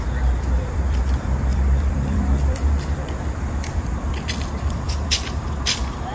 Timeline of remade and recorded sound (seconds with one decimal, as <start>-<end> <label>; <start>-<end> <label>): 0.0-6.1 remade

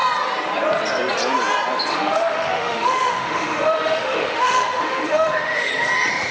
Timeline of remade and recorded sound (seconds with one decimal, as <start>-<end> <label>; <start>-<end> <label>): 0.0-1.9 recorded; 1.9-5.7 remade; 5.7-6.3 recorded

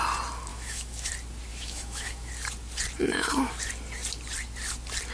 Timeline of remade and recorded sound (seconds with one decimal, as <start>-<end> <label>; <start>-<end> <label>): 0.0-0.5 recorded; 0.5-1.1 remade; 1.1-1.5 recorded; 1.5-2.3 remade; 2.3-3.0 recorded; 3.0-3.5 remade; 3.5-5.1 recorded

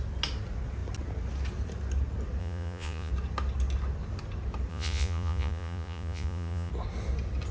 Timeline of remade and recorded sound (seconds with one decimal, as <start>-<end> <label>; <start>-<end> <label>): 0.0-2.4 recorded; 2.4-3.1 remade; 3.1-4.7 recorded; 4.7-6.7 remade; 6.7-7.5 recorded

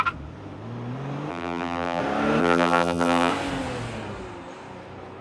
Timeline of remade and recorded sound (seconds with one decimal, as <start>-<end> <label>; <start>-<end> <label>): 0.0-1.3 recorded; 1.3-2.0 remade; 2.0-2.4 recorded; 2.4-3.3 remade; 3.3-5.2 recorded

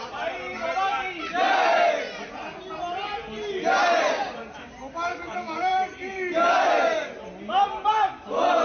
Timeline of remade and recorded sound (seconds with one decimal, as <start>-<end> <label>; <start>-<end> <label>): 0.0-5.1 recorded; 5.1-5.7 remade; 5.7-8.6 recorded